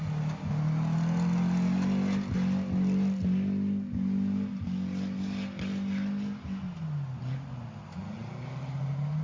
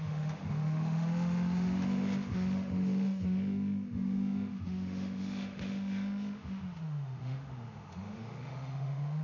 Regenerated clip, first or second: second